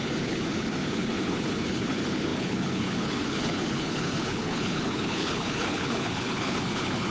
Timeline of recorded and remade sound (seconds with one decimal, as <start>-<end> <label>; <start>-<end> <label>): 0.0-7.1 remade